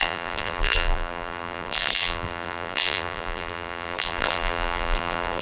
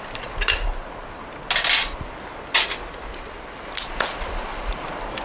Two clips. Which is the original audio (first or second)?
second